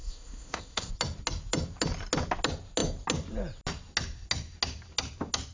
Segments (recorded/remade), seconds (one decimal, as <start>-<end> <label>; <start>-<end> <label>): 0.0-0.9 remade; 0.9-5.5 recorded